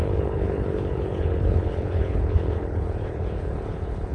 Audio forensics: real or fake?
fake